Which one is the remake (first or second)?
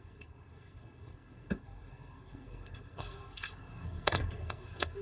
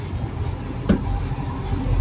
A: first